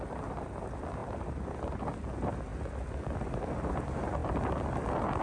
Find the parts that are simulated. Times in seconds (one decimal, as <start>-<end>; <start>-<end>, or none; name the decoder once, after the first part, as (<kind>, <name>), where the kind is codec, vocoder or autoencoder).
none